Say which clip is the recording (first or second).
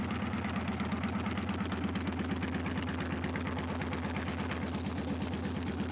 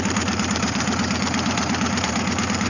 first